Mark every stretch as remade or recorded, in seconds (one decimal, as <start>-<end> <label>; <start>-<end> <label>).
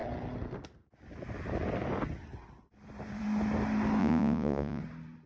0.0-4.0 recorded; 4.0-4.8 remade; 4.8-5.3 recorded